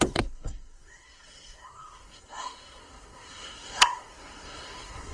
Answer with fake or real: fake